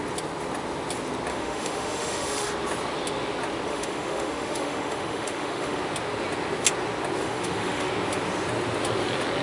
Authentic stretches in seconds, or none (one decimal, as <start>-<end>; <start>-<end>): 0.0-1.3; 2.5-3.7; 5.8-7.2; 7.9-9.4